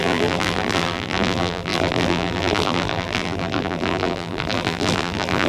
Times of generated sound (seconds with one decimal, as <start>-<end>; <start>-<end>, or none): 0.0-5.5